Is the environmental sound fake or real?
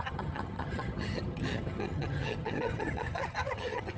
fake